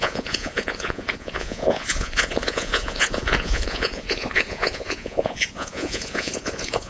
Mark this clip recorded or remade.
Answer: remade